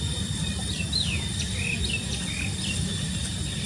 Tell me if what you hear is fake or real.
real